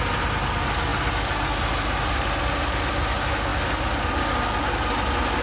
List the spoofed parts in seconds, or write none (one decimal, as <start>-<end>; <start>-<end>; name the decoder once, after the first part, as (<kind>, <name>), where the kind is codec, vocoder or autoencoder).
none